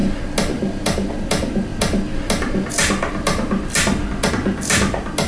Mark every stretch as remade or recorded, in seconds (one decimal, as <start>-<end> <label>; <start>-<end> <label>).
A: 0.0-5.3 recorded